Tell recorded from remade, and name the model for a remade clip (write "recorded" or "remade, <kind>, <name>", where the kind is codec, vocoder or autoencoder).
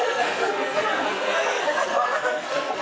remade, codec, SNAC